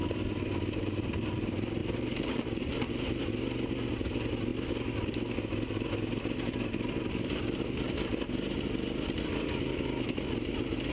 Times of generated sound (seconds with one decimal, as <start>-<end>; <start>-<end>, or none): 1.8-3.2